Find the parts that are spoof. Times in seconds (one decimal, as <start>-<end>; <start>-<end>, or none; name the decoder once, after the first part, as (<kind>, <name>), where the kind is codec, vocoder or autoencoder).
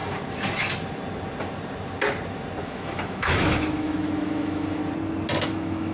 2.6-4.8 (autoencoder, DAC-VAE); 5.4-5.9